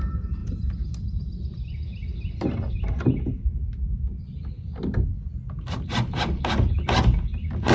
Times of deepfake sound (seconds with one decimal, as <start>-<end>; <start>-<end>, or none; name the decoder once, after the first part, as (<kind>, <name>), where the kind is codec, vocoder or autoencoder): none